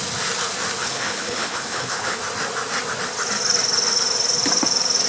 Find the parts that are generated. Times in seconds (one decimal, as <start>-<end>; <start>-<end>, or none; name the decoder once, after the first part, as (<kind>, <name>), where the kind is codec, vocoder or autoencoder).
0.8-2.2 (codec, HILCodec)